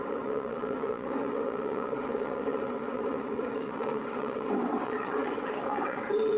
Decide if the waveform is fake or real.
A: fake